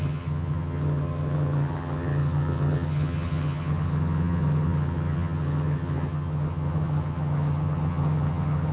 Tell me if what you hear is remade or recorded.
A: remade